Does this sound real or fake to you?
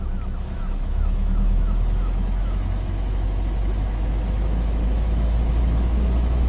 fake